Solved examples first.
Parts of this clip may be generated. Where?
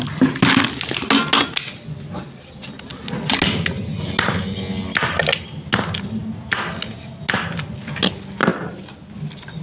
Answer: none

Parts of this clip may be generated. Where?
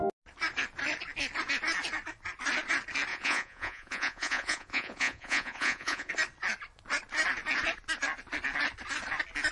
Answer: 3.1-6.1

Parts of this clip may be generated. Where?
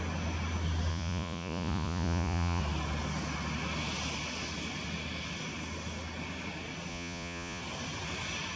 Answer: 0.9-2.6; 6.9-7.6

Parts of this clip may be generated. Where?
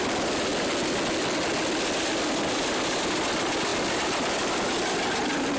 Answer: 0.0-0.5; 2.3-5.6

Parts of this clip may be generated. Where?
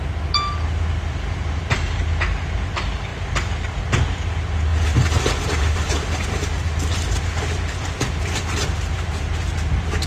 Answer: 1.1-1.6; 4.7-9.7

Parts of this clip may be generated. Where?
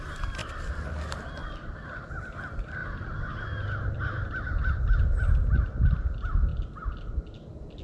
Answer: none